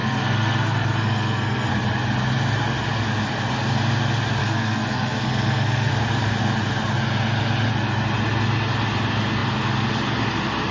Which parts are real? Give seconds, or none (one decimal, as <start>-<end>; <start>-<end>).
1.7-4.4; 5.9-10.7